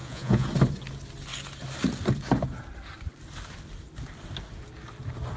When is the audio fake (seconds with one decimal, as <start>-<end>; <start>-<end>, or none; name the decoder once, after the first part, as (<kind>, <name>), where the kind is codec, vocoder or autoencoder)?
0.0-0.5 (vocoder, Vocos)